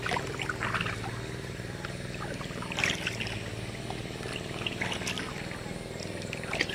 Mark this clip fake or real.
real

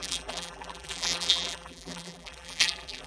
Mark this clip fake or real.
fake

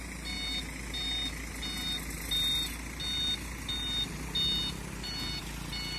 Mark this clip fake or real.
real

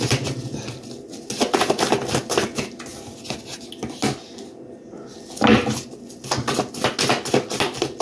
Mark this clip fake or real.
real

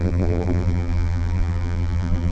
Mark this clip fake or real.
fake